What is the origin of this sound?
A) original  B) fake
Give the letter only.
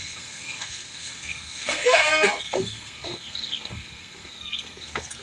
B